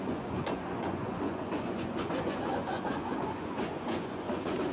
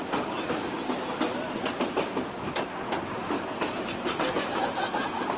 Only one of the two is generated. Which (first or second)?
first